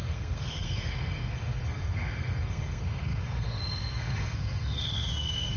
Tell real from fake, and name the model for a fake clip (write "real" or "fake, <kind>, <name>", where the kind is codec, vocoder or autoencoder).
fake, codec, SNAC